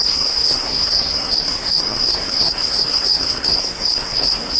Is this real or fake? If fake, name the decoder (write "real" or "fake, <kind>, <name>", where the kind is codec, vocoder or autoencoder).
fake, codec, SNAC